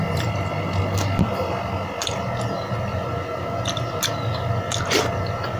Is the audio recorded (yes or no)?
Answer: yes